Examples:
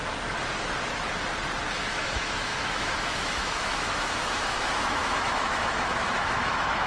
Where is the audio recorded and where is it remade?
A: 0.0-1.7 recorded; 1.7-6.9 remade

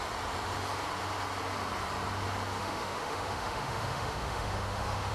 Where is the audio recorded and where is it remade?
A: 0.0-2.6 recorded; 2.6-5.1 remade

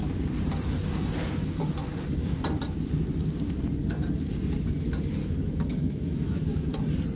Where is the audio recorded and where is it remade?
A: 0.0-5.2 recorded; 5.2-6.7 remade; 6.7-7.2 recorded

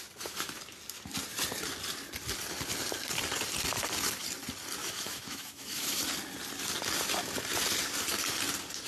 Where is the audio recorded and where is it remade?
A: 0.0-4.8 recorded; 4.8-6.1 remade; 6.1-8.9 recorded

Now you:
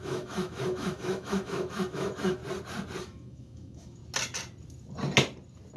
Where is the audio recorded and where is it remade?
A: 0.0-2.4 remade; 2.4-3.0 recorded; 3.0-4.0 remade; 4.0-5.8 recorded